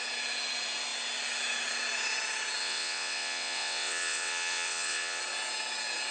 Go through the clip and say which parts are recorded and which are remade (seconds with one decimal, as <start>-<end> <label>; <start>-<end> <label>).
0.0-2.6 recorded; 2.6-5.2 remade; 5.2-6.1 recorded